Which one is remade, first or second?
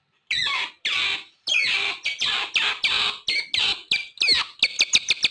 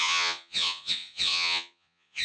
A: second